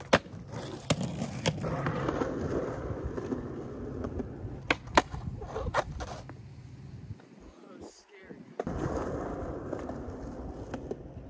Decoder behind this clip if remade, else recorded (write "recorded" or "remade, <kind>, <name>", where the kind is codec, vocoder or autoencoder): recorded